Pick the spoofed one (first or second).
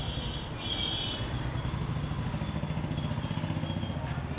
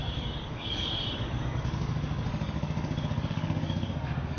second